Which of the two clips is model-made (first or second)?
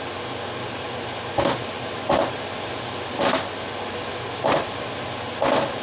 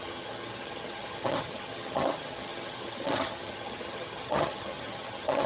second